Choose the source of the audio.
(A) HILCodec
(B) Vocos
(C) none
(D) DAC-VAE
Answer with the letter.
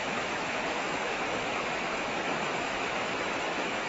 D